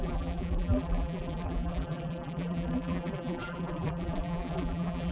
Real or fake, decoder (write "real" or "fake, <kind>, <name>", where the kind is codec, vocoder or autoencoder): fake, vocoder, BigVGAN v2